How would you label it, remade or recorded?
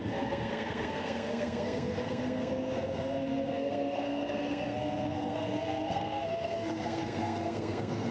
remade